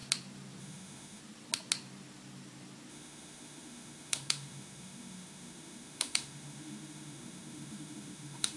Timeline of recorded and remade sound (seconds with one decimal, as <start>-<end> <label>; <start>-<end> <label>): 0.0-0.6 recorded; 0.6-1.2 remade; 1.2-2.9 recorded; 2.9-8.6 remade